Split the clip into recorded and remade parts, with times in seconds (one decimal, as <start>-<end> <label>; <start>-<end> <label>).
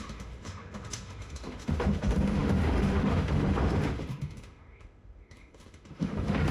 0.0-6.5 remade